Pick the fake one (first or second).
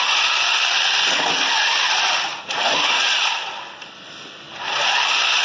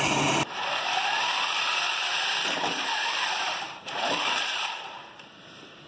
second